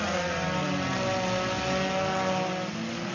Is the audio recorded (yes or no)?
yes